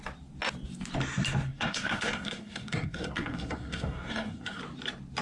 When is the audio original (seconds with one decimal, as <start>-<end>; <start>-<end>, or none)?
0.0-1.5; 4.6-5.2